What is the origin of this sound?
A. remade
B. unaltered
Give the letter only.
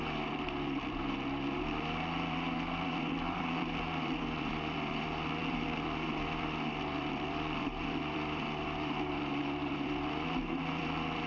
A